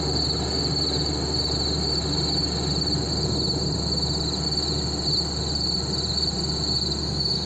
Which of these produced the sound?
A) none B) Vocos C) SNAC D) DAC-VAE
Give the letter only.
A